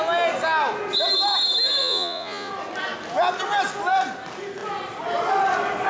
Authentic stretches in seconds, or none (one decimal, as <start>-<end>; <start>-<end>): 0.0-1.8; 2.5-5.9